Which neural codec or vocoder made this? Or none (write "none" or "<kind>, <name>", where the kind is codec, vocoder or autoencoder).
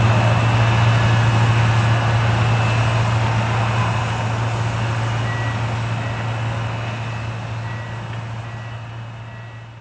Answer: none